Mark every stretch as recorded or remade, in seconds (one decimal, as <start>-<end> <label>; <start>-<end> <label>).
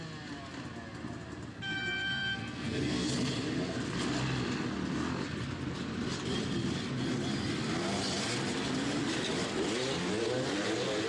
0.0-1.5 recorded; 1.5-3.1 remade; 3.1-11.1 recorded